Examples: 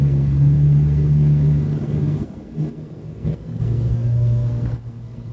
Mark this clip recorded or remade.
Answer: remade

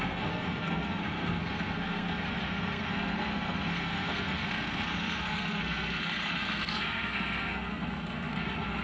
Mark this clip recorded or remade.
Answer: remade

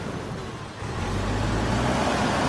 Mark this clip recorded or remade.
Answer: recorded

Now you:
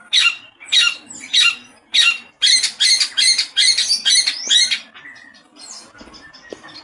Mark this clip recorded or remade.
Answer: recorded